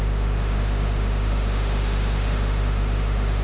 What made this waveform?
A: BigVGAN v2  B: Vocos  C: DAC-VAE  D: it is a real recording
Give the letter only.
C